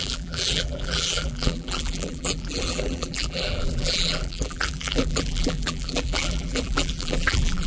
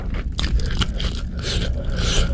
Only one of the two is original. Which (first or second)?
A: second